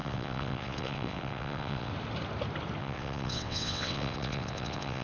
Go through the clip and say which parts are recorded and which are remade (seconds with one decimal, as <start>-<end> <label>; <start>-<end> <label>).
0.0-1.9 remade; 1.9-2.8 recorded; 2.8-5.0 remade